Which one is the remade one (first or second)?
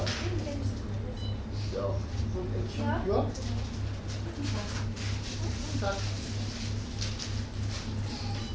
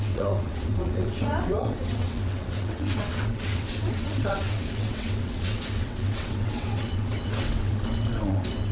second